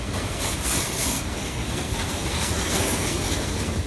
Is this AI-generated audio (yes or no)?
yes